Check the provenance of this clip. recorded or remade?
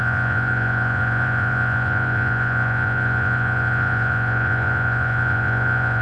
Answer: remade